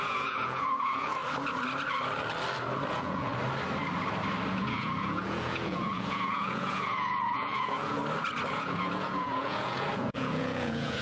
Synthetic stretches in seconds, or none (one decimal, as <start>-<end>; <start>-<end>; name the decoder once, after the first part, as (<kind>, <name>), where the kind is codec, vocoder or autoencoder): 0.0-1.2 (vocoder, Vocos); 2.9-3.3; 4.5-8.0; 8.5-11.0